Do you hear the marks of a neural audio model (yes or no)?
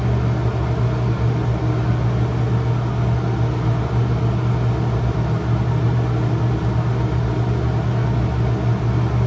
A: no